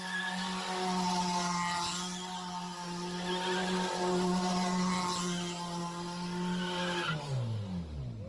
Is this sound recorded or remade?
recorded